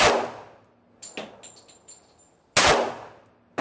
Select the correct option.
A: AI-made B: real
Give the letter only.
B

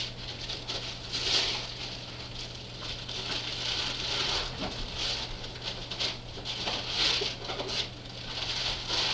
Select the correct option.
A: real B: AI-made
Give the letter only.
A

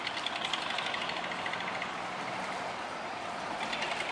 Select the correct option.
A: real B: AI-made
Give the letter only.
A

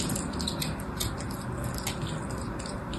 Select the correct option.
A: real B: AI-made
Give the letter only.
A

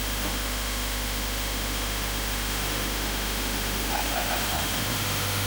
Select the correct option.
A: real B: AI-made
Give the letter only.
B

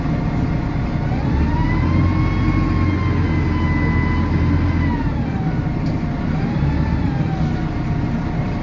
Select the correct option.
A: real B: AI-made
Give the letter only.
A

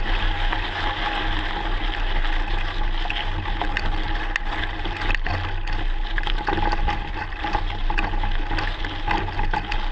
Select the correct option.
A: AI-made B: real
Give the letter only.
B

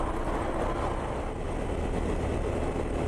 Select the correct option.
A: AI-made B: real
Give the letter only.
B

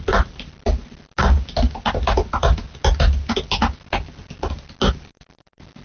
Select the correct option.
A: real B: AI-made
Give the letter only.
A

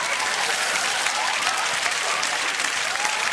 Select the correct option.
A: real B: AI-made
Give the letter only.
B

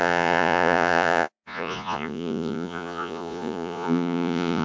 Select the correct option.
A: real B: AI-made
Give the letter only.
B